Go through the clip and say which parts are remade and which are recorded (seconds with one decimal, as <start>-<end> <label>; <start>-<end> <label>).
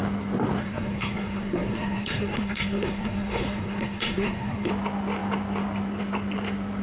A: 0.0-0.6 recorded; 0.6-4.7 remade; 4.7-6.8 recorded